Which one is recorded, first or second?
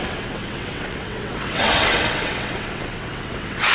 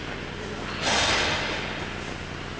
second